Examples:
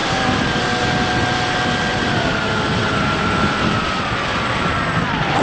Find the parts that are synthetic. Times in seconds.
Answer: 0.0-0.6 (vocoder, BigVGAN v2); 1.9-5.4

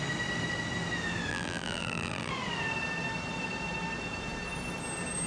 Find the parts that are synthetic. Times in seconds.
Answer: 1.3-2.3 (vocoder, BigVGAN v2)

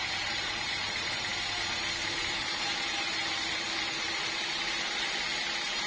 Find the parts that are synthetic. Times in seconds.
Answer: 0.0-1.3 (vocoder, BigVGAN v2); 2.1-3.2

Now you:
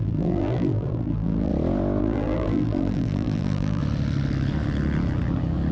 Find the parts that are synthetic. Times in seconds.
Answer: 0.0-1.5 (vocoder, BigVGAN v2); 2.0-3.8

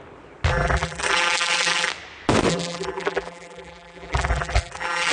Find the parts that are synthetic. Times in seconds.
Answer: 0.5-1.9 (vocoder, BigVGAN v2); 2.5-5.1

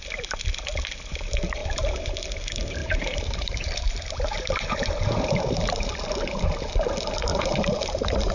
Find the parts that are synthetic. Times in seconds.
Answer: 1.6-2.1 (vocoder, BigVGAN v2); 2.8-5.9; 7.3-8.3

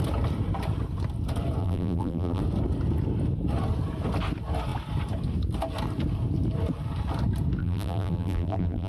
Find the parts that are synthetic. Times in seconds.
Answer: 1.6-2.4 (vocoder, BigVGAN v2); 7.6-8.9

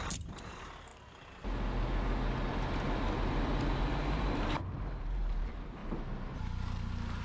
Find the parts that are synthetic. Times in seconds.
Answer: 0.0-0.9 (vocoder, BigVGAN v2); 3.8-5.8; 6.3-7.2